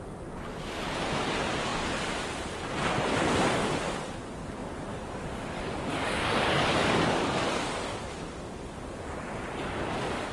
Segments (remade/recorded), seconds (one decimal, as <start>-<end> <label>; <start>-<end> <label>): 0.0-4.9 recorded; 4.9-8.0 remade; 8.0-10.3 recorded